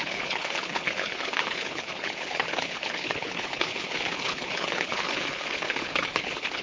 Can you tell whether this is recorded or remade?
remade